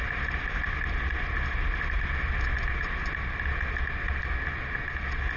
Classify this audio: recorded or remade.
recorded